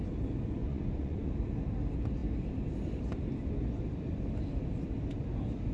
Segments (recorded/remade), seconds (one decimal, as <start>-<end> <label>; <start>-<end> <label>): 0.0-0.6 recorded; 0.6-1.3 remade; 1.3-5.7 recorded